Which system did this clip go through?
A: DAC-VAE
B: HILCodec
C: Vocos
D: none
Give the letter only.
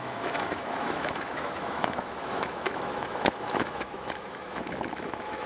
A